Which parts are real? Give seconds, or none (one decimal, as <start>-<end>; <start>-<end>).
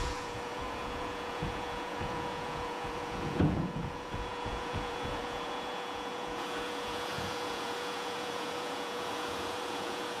none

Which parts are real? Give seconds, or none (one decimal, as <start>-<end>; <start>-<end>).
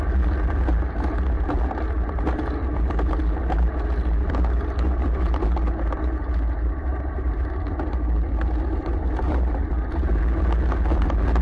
0.0-6.9; 7.5-11.4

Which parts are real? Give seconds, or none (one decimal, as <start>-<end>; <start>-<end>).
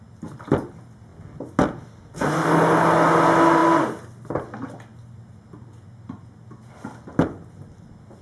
0.0-8.2